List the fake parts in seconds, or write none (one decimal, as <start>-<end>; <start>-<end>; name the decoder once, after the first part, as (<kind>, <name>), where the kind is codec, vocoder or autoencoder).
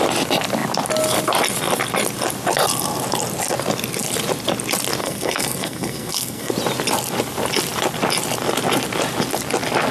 5.0-6.5 (codec, SNAC)